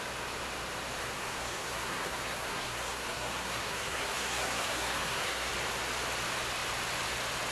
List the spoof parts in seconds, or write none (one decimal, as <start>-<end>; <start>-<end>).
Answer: 1.0-5.5